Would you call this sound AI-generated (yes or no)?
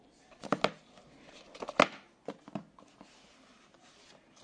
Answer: no